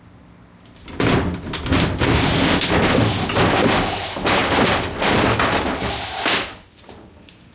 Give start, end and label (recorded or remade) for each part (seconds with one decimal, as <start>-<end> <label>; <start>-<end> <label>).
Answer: 0.0-7.5 recorded